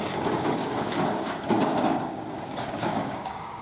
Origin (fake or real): fake